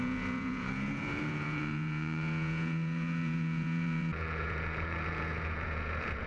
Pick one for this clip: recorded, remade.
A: remade